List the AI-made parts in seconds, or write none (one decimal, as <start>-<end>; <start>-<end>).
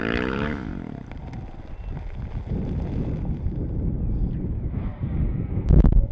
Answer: 0.0-0.7; 4.4-4.9; 5.5-6.1